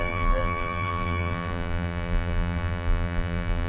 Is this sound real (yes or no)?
no